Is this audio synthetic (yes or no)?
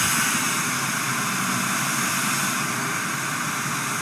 no